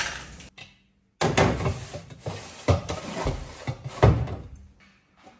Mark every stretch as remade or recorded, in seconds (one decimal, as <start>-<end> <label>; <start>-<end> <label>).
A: 0.0-1.7 recorded; 1.7-3.5 remade; 3.5-5.4 recorded